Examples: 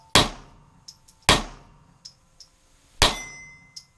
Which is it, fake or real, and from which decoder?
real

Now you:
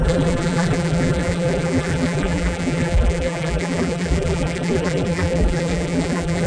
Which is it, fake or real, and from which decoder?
fake, vocoder, BigVGAN v2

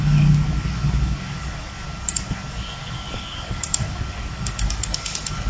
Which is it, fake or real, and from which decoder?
fake, codec, DAC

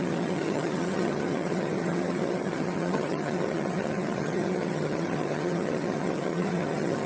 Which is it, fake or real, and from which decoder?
fake, vocoder, HiFi-GAN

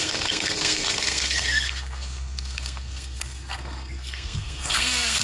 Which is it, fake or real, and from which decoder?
fake, codec, SNAC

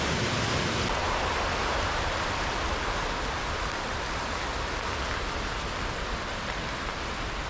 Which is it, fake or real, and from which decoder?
real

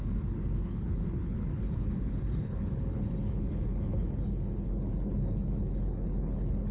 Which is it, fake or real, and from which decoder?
fake, codec, HILCodec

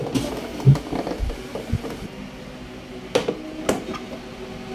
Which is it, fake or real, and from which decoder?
real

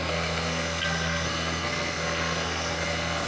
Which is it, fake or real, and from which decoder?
fake, codec, SNAC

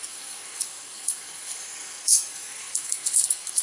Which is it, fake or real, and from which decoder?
fake, codec, SNAC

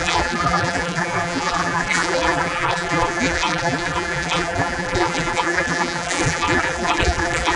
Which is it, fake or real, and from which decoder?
fake, vocoder, BigVGAN v2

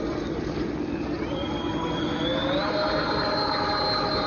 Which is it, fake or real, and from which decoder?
real